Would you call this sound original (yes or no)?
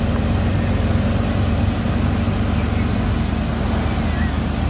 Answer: yes